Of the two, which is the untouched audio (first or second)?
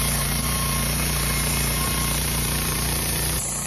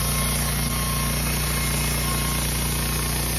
second